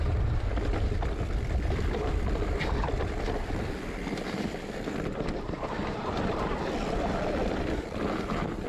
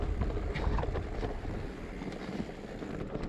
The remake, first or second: first